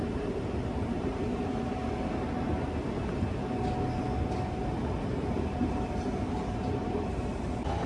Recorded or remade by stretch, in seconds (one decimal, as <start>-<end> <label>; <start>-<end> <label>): 0.0-1.8 remade; 1.8-4.9 recorded; 4.9-7.9 remade